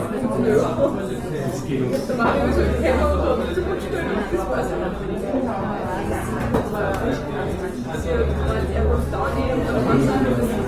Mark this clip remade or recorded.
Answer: recorded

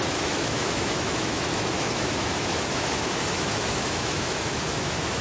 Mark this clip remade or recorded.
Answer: remade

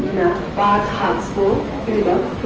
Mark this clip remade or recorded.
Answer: remade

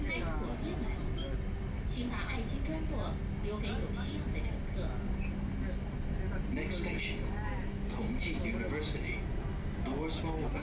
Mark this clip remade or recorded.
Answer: recorded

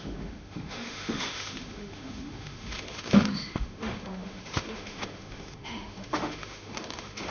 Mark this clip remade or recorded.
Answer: remade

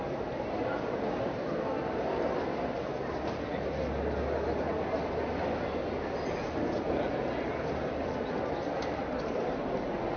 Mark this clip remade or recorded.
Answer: recorded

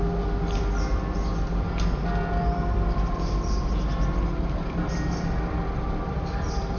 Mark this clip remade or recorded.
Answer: recorded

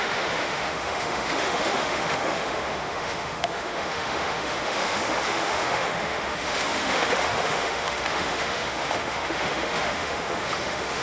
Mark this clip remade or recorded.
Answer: remade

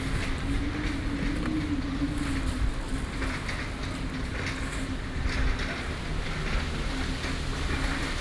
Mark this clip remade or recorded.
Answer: recorded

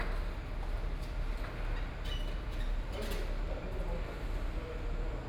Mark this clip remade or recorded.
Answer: recorded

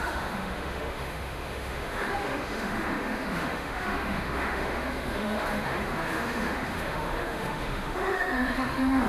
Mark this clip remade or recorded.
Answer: remade